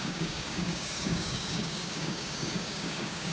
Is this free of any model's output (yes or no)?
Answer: no